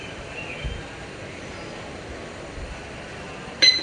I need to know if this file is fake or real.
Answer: real